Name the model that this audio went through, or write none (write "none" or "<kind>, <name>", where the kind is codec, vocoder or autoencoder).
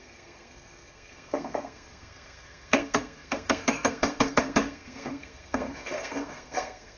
codec, SNAC